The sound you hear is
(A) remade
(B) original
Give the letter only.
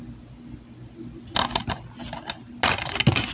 B